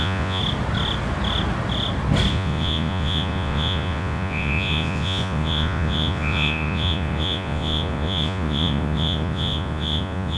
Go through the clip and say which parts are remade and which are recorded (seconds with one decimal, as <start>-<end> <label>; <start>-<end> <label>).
0.0-0.4 remade; 0.4-2.3 recorded; 2.3-10.4 remade